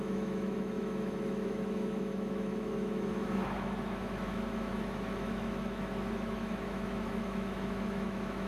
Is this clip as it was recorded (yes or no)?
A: no